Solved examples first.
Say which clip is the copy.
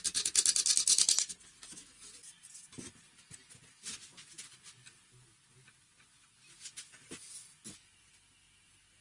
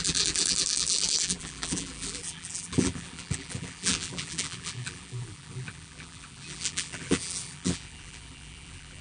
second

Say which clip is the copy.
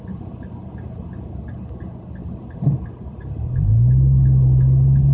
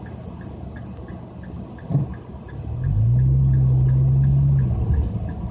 first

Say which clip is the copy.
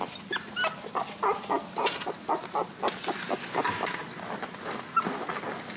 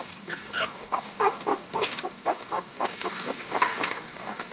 second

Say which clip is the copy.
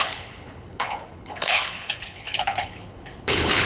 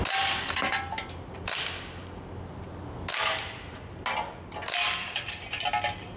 first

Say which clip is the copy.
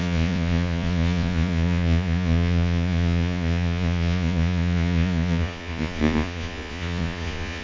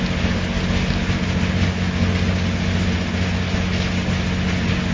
first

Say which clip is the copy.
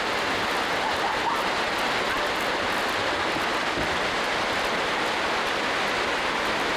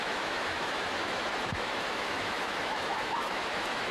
second